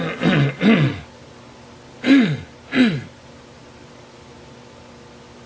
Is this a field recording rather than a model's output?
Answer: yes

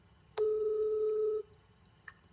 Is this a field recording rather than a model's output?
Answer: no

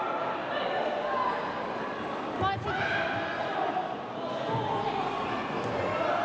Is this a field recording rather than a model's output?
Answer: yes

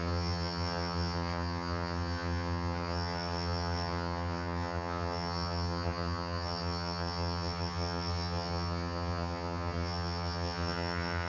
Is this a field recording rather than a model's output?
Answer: no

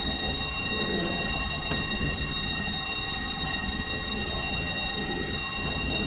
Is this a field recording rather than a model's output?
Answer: no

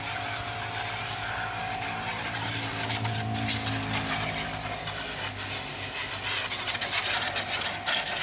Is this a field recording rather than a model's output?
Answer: yes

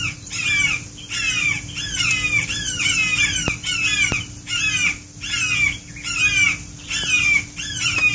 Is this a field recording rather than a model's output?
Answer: yes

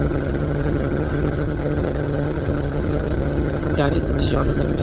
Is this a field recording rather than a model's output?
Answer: no